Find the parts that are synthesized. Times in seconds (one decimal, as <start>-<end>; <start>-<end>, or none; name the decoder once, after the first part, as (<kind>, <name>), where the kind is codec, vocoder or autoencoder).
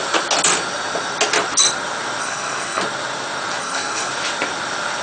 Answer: 2.2-2.8 (codec, SNAC); 3.6-4.1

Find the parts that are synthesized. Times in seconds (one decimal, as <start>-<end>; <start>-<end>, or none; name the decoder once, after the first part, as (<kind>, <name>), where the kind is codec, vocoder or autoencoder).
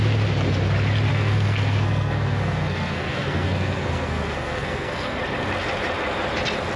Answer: 1.1-5.2 (codec, SNAC)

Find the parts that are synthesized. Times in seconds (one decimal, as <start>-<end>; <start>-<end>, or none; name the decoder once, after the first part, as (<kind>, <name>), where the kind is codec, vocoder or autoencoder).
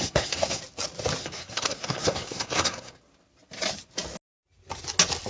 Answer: 0.0-0.6 (codec, SNAC); 1.2-3.0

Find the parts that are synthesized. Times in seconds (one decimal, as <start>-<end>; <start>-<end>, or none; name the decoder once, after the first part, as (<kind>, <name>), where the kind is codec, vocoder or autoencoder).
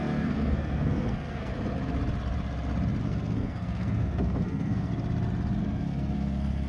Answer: 0.0-1.5 (codec, SNAC); 3.0-4.9; 5.6-6.7